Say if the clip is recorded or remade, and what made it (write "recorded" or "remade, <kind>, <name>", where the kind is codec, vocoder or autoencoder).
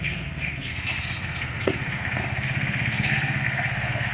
remade, codec, SNAC